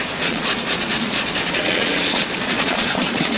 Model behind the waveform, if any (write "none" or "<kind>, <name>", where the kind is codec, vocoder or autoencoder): vocoder, Vocos